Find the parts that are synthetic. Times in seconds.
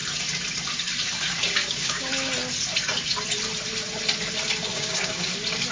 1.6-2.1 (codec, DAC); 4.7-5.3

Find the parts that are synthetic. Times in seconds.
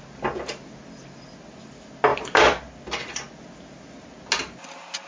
none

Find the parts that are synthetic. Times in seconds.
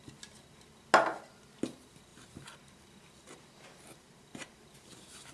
none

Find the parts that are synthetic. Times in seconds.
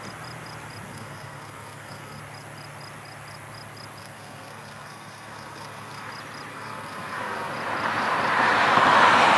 0.9-2.2 (codec, SNAC); 4.0-6.1; 6.5-7.5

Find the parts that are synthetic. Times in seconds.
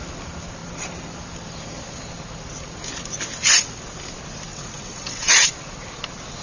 4.5-5.5 (vocoder, WaveNeXt)